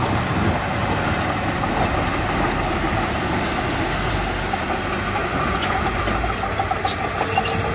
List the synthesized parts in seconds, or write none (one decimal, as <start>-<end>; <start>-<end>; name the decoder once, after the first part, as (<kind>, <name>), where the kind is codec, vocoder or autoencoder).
5.2-6.0 (vocoder, Vocos)